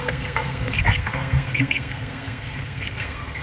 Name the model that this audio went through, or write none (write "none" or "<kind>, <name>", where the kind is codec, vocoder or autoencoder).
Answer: codec, SNAC